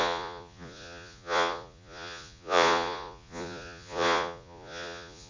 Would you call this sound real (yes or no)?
no